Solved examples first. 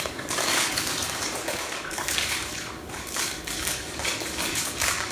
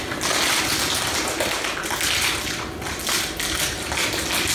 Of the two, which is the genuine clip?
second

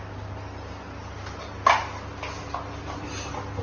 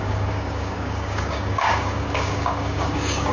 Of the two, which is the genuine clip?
first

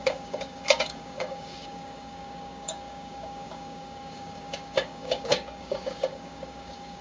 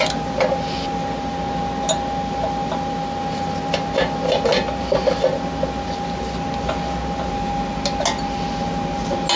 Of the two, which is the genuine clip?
second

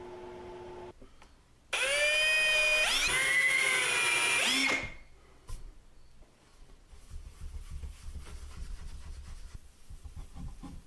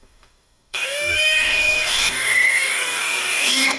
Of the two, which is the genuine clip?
first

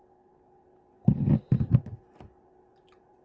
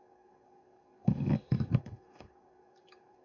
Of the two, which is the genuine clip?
first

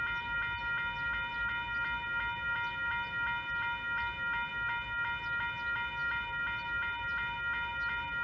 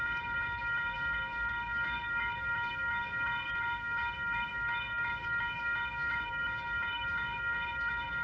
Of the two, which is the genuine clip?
first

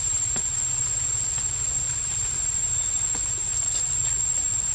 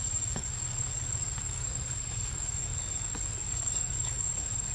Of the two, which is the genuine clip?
first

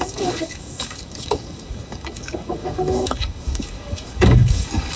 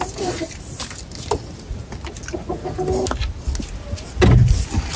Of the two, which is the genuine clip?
second